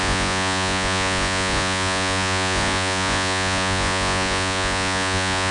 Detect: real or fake fake